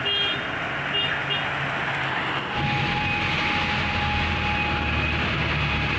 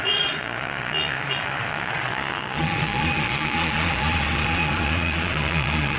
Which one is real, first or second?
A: first